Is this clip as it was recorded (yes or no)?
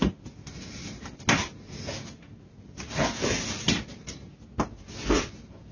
yes